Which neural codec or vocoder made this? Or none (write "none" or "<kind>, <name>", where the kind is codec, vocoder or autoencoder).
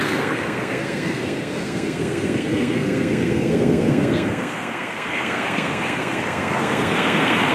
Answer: codec, SNAC